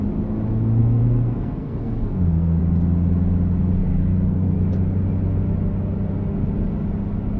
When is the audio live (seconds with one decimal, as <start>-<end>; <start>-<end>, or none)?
0.0-0.8; 2.6-3.8; 4.6-7.4